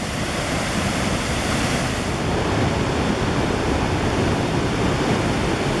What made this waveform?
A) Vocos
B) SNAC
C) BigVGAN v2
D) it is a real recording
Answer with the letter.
C